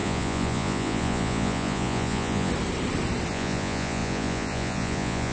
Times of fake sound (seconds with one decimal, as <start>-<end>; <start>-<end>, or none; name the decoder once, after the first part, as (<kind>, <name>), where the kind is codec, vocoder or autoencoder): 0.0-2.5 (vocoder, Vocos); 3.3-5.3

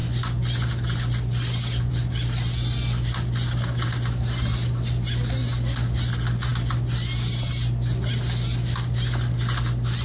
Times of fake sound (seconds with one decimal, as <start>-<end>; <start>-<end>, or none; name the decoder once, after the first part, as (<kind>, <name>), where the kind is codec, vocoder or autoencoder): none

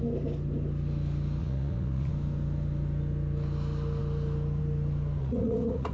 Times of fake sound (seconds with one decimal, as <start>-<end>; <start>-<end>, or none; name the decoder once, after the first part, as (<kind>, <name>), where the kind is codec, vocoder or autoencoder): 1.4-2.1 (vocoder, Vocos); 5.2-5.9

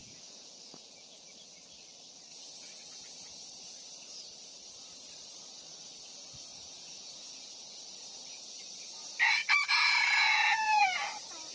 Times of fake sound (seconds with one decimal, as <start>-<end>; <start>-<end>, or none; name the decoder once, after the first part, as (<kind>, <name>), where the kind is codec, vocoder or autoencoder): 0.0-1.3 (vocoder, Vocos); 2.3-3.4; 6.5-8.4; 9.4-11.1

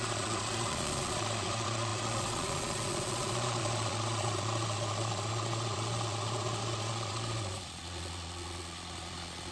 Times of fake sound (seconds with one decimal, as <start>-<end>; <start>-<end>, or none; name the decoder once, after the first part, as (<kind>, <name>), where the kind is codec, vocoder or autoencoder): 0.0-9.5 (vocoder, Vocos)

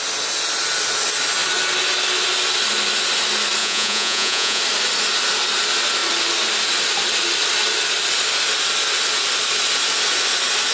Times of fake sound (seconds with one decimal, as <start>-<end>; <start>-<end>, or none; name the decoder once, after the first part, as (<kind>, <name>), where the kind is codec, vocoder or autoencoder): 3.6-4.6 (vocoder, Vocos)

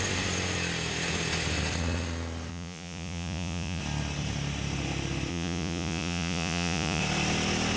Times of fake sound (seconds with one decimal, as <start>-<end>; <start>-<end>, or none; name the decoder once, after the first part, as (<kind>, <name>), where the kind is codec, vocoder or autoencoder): 2.5-3.8 (vocoder, Vocos); 5.3-7.0